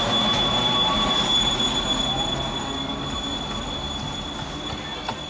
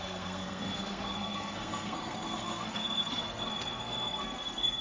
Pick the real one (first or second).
first